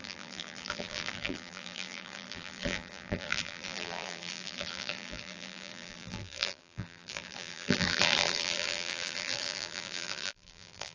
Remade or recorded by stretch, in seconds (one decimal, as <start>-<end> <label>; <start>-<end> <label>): 0.0-10.9 remade